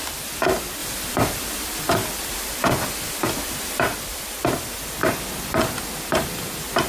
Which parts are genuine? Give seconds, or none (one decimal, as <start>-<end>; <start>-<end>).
0.0-6.9